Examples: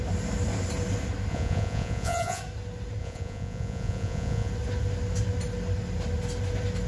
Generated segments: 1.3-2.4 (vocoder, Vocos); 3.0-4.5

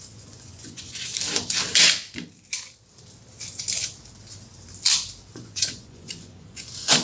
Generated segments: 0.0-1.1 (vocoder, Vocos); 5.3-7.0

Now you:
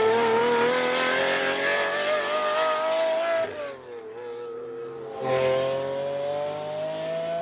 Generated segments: none

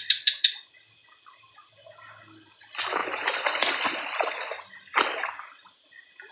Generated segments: none